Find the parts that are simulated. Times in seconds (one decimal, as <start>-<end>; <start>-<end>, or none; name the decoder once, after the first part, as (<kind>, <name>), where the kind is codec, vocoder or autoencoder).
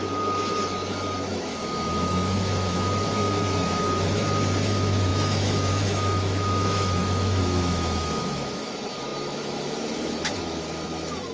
0.0-11.3 (autoencoder, DAC-VAE)